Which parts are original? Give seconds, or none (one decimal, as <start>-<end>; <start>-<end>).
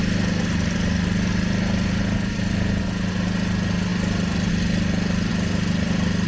0.0-6.3